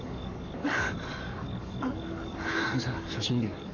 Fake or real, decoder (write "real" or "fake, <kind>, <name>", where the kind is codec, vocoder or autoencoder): fake, codec, DAC